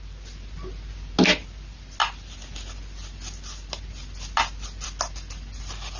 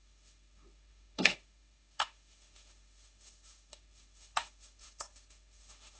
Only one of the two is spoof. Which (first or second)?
second